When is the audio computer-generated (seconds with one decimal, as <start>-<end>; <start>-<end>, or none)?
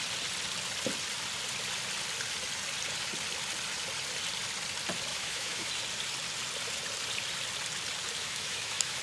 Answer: 5.1-5.7; 8.2-9.0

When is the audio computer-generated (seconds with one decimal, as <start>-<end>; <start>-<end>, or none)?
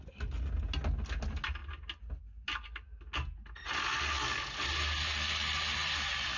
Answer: none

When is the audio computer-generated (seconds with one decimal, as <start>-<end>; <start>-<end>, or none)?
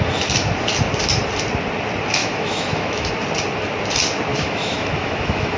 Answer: 2.2-3.1; 4.3-5.6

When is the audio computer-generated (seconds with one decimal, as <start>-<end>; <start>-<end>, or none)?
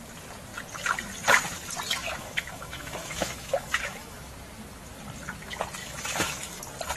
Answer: 2.0-4.3; 5.8-6.6